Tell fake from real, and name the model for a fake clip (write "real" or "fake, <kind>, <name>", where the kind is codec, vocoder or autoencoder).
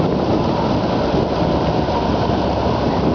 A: real